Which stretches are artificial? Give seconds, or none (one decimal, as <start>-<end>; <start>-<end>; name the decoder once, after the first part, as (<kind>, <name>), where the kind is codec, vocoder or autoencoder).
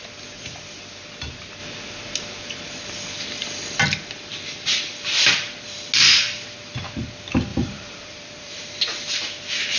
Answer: 7.5-8.6 (vocoder, BigVGAN v2)